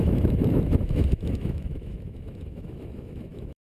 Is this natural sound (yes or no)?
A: no